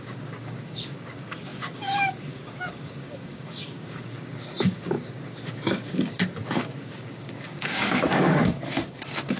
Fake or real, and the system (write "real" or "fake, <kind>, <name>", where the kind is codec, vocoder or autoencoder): fake, codec, DAC